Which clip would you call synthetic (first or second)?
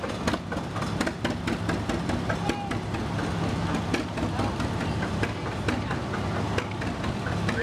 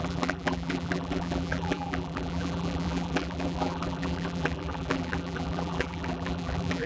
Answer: second